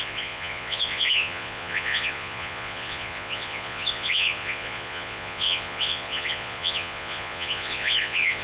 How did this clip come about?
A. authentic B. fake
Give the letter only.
B